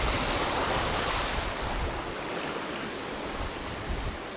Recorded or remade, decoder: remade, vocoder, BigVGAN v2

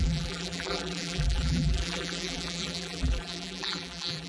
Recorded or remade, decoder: remade, vocoder, BigVGAN v2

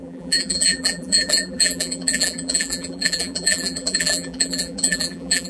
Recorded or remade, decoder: remade, vocoder, BigVGAN v2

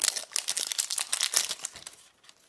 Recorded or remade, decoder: recorded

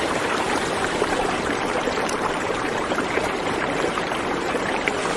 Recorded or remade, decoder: remade, vocoder, BigVGAN v2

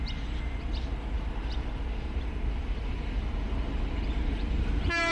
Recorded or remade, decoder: remade, vocoder, BigVGAN v2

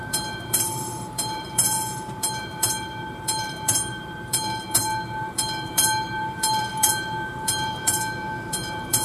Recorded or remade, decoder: remade, vocoder, BigVGAN v2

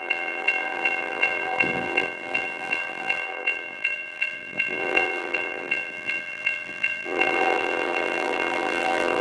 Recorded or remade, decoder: remade, vocoder, BigVGAN v2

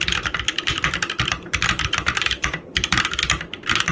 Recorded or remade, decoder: remade, vocoder, BigVGAN v2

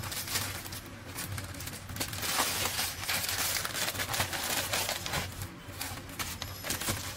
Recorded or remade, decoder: recorded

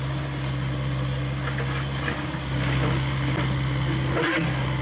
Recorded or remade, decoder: recorded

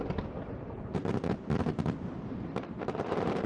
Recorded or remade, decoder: remade, vocoder, BigVGAN v2